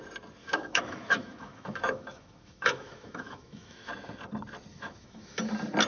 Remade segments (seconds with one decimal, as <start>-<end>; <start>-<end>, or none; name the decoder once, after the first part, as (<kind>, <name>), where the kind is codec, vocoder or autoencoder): 0.4-3.9 (autoencoder, DAC-VAE); 4.7-5.4